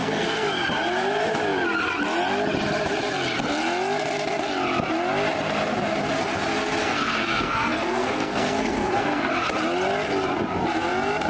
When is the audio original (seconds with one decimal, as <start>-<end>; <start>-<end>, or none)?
0.7-6.8; 9.3-11.3